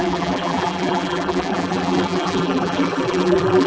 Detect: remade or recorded remade